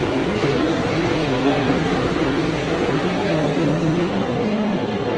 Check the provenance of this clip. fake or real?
fake